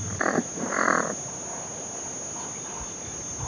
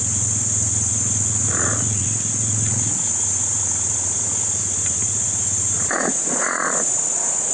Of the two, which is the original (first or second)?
first